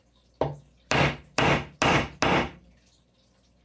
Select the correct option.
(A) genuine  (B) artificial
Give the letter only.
A